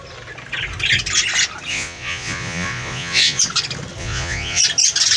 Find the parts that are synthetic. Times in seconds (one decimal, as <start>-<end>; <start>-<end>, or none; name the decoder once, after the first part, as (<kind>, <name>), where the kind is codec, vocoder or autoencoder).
1.7-3.4 (vocoder, Vocos); 4.0-4.6